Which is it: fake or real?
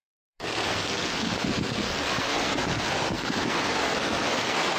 fake